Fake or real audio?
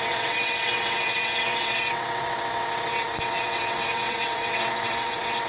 fake